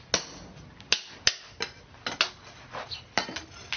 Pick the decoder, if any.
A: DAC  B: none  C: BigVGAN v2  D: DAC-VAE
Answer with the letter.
B